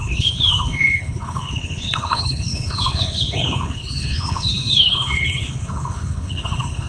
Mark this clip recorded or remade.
remade